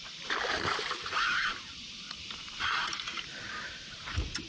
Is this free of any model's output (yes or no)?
no